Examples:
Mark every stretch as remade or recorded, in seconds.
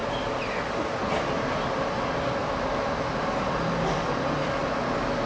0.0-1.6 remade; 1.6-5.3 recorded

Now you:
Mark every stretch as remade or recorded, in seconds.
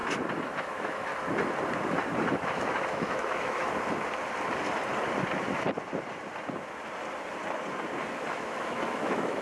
0.0-0.6 recorded; 0.6-1.1 remade; 1.1-2.3 recorded; 2.3-3.6 remade; 3.6-8.3 recorded; 8.3-9.4 remade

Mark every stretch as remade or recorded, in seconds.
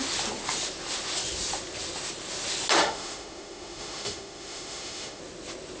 0.0-2.8 recorded; 2.8-5.2 remade; 5.2-5.8 recorded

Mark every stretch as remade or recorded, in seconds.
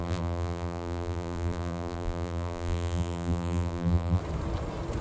0.0-4.2 remade; 4.2-5.0 recorded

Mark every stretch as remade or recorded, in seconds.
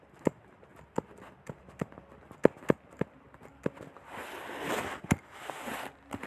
0.0-6.3 recorded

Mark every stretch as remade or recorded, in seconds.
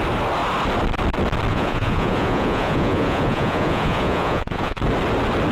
0.0-1.5 recorded; 1.5-4.8 remade; 4.8-5.5 recorded